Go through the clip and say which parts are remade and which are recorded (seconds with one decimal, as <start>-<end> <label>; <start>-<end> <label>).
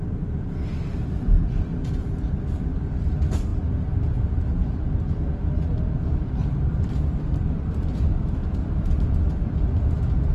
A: 0.0-1.7 remade; 1.7-2.7 recorded; 2.7-3.5 remade; 3.5-6.3 recorded; 6.3-10.3 remade